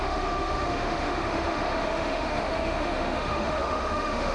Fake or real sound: fake